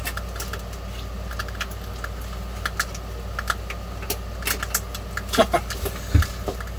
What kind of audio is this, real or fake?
real